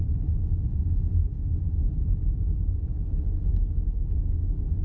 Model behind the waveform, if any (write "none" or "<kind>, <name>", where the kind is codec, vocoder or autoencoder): none